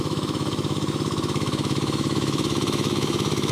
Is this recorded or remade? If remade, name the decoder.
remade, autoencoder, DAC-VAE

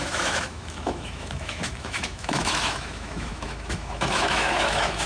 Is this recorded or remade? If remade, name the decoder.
remade, autoencoder, DAC-VAE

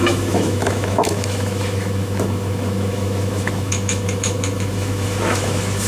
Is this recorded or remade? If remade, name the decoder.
remade, autoencoder, DAC-VAE